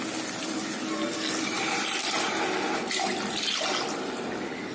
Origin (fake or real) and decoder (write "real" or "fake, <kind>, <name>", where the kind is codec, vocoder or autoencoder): real